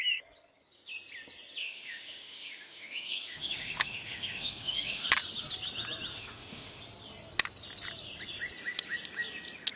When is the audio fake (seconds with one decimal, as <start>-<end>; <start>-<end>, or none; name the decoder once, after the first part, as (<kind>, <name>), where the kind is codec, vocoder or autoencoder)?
1.6-5.1 (autoencoder, DAC-VAE); 6.1-6.8